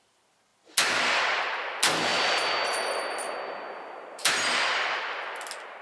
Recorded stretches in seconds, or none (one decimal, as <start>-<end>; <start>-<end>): 0.0-5.8